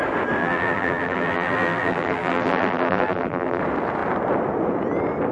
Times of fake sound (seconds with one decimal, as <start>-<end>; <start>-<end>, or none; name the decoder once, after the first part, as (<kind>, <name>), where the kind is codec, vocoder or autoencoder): 0.4-3.6 (vocoder, BigVGAN v2)